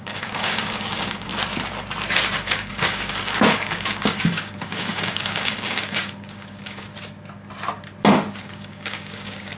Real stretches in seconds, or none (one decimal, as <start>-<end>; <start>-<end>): 1.3-2.5; 6.9-8.4